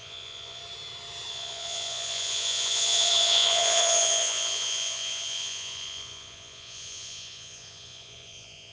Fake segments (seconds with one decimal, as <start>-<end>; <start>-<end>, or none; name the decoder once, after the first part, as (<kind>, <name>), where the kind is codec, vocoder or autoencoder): 0.0-0.6 (vocoder, Vocos); 1.3-8.7

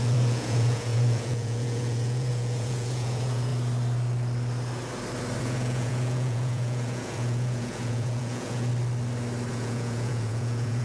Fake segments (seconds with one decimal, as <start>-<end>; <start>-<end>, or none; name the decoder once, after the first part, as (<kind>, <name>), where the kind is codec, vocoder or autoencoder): 0.0-3.5 (vocoder, Vocos); 5.4-8.7; 9.5-10.8

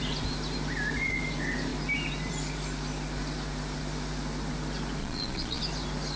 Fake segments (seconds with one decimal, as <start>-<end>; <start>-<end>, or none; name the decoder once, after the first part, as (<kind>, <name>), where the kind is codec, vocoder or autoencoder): 5.0-5.6 (vocoder, Vocos)

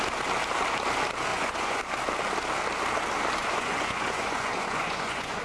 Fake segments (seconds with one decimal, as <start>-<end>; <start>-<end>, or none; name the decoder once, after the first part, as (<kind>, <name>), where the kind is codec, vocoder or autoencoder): 1.3-1.8 (vocoder, Vocos); 3.4-5.4